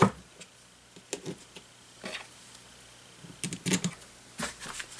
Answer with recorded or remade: recorded